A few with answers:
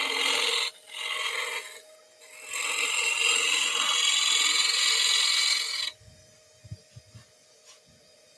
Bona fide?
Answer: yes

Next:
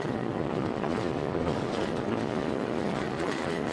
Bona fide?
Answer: no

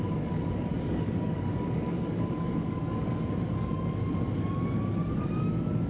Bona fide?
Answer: no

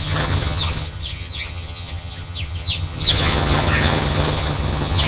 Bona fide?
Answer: no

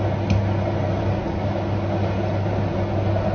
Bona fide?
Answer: yes